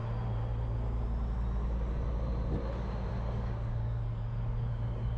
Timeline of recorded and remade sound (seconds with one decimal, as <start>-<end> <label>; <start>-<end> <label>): 0.0-3.1 recorded; 3.1-5.2 remade